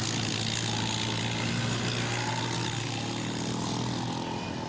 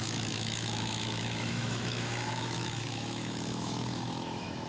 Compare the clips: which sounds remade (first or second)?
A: second